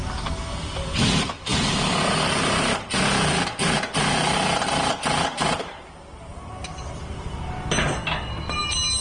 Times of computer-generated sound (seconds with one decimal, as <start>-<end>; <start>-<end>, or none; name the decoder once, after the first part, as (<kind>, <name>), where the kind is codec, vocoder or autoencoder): none